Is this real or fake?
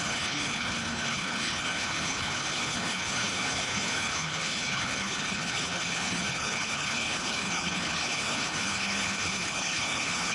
fake